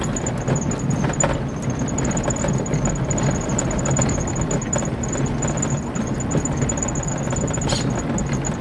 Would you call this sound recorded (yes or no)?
yes